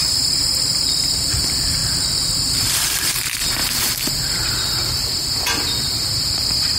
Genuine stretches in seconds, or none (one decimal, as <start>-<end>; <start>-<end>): 0.0-0.5